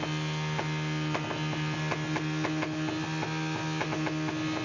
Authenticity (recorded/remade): recorded